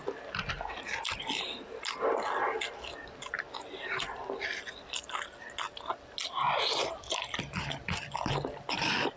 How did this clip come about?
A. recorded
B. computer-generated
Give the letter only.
A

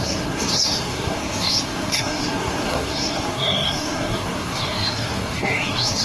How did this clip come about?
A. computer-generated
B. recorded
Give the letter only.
A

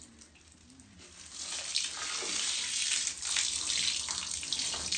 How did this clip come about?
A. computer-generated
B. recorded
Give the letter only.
B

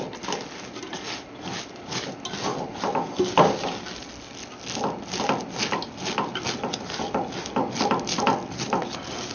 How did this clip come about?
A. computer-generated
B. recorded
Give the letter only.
B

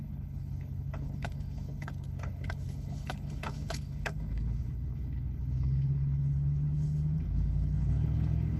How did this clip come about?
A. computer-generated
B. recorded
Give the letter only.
A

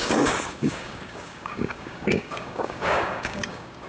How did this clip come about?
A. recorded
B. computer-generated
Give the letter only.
B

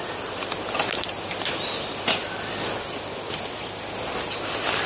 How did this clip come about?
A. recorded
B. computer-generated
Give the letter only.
A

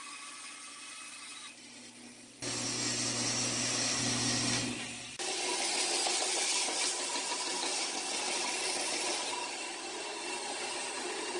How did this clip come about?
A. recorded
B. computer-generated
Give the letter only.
A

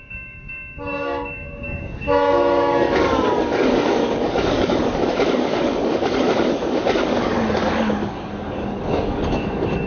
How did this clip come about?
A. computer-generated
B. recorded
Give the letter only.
A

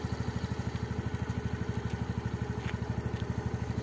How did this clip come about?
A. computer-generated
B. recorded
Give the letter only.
B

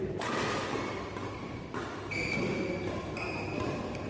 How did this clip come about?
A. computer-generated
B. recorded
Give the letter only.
B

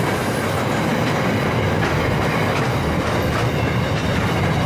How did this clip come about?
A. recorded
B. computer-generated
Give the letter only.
A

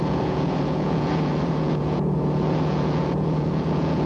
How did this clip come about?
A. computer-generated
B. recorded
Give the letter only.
A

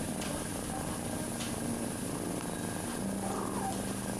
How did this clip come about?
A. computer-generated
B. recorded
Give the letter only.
B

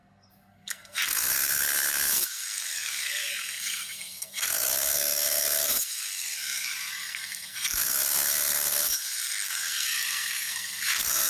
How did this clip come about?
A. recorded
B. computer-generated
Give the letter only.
B